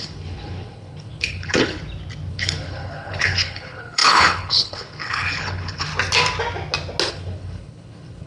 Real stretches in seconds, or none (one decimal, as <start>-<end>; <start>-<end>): 1.8-2.3; 5.9-7.1